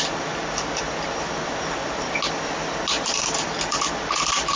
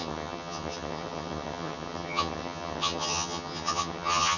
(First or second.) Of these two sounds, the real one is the first